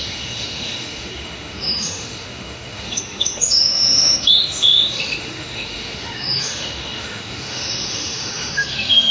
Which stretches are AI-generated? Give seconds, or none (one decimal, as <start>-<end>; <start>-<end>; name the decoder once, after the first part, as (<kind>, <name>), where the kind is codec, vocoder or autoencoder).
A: 0.0-9.1 (autoencoder, DAC-VAE)